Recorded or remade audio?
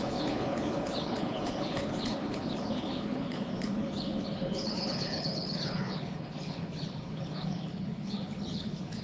remade